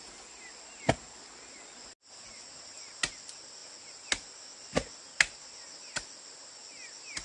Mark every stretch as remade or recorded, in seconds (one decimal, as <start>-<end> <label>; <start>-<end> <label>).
0.0-7.2 recorded